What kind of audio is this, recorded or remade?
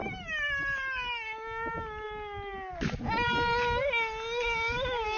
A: recorded